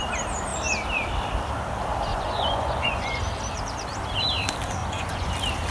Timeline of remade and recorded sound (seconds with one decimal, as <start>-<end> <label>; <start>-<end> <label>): 0.0-2.1 recorded; 2.1-3.2 remade; 3.2-4.8 recorded; 4.8-5.3 remade; 5.3-5.7 recorded